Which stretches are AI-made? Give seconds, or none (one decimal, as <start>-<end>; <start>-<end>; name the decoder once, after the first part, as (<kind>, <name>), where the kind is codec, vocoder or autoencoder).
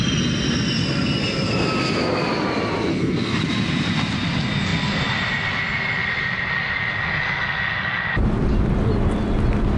2.9-3.4 (codec, SNAC)